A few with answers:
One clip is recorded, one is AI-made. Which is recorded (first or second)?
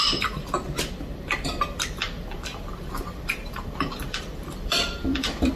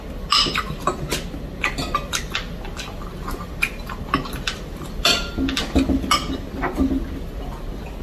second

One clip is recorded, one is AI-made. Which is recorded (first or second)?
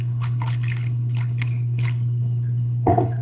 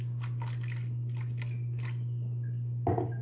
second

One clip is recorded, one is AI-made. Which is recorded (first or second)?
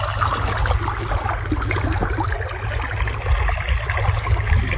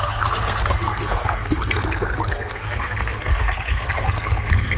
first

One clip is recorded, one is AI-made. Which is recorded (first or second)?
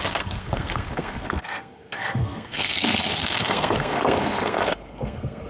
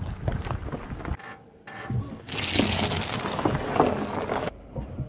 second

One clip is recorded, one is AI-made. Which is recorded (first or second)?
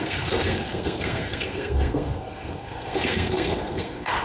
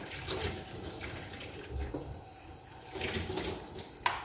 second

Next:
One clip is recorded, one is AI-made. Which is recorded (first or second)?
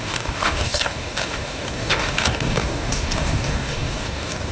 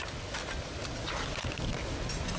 second